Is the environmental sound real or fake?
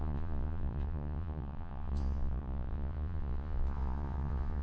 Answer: fake